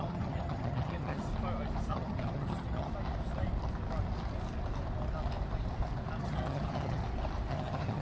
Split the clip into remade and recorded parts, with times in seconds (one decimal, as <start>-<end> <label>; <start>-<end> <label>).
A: 0.0-1.3 remade; 1.3-1.9 recorded; 1.9-2.9 remade; 2.9-6.2 recorded; 6.2-7.0 remade; 7.0-7.5 recorded; 7.5-8.0 remade